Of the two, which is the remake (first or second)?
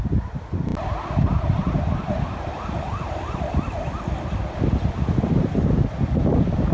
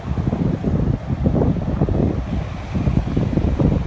second